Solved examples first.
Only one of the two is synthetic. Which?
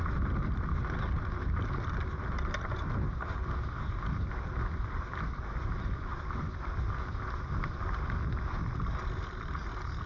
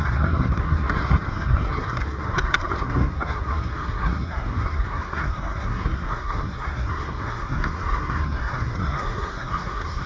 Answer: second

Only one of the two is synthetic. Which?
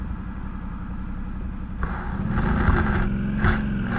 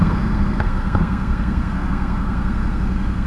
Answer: second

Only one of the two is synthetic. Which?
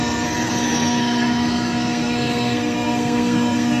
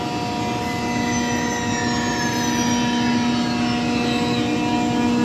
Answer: first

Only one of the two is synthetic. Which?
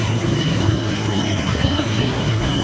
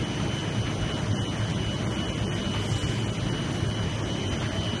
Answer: first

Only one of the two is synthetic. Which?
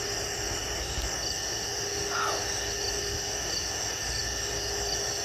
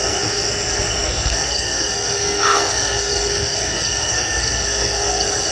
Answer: second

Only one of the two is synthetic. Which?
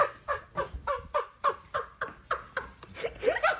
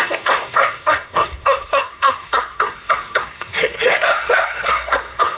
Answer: second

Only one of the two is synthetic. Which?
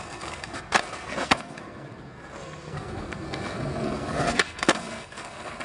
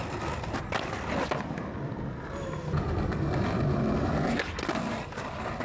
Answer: first